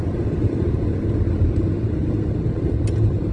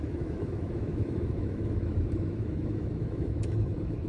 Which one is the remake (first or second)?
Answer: second